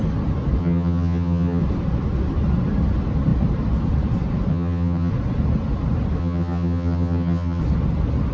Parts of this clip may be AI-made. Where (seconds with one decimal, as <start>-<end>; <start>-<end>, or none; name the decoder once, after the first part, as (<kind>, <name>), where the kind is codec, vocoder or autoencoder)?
0.6-1.6 (vocoder, HiFi-GAN); 4.5-5.1; 6.2-7.6